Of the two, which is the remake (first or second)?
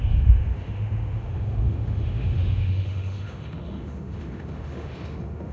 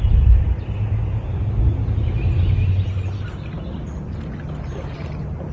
first